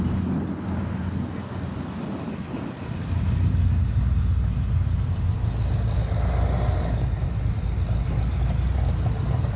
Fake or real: real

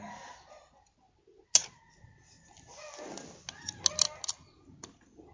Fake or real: real